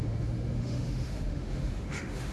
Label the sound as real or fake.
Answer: fake